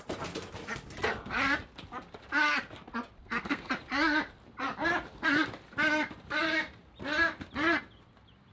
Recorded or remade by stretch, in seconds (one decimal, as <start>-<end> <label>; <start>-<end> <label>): 0.0-3.2 recorded; 3.2-3.7 remade; 3.7-8.5 recorded